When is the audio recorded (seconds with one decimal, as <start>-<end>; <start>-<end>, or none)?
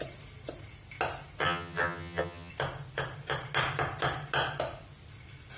0.0-1.4; 2.5-5.6